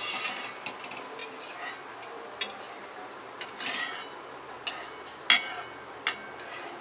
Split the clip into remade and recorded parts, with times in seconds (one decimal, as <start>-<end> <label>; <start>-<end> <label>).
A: 0.0-6.8 recorded